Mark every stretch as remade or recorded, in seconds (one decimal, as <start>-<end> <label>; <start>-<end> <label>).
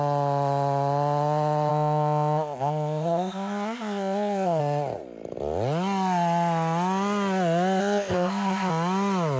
0.0-1.7 recorded; 1.7-4.6 remade; 4.6-7.8 recorded; 7.8-8.7 remade; 8.7-9.4 recorded